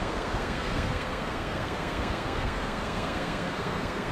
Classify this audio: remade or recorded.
remade